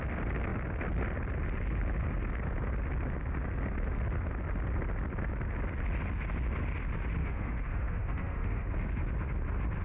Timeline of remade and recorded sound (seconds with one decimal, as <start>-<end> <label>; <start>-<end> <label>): 0.0-7.2 recorded; 7.2-8.7 remade; 8.7-9.8 recorded